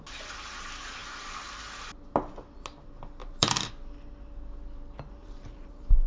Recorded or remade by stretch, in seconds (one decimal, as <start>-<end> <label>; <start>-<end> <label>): 0.0-3.2 recorded; 3.2-3.7 remade; 3.7-5.2 recorded; 5.2-6.1 remade